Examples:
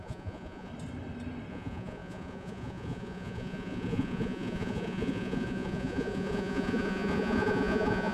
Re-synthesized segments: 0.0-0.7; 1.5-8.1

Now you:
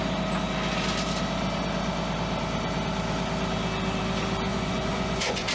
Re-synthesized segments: 4.5-5.5

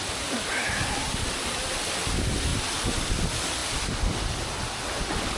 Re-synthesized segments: none

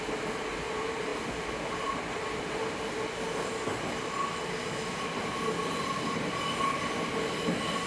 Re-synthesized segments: none

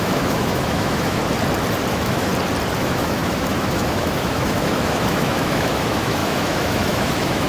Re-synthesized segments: 0.0-1.2; 1.9-2.3; 2.8-7.5

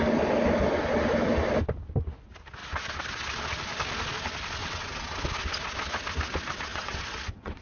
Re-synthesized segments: 4.6-5.2; 6.7-7.6